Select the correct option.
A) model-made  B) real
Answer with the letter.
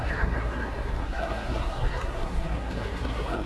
A